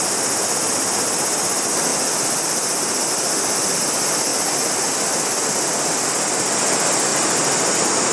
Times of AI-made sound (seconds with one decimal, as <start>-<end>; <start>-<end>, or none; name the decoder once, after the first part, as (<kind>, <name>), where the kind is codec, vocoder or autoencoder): none